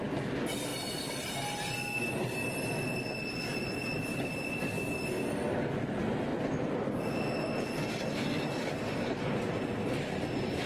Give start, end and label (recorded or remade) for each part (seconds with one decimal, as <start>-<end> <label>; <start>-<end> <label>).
0.0-0.7 recorded; 0.7-1.3 remade; 1.3-4.1 recorded; 4.1-5.1 remade; 5.1-6.3 recorded; 6.3-7.1 remade; 7.1-10.7 recorded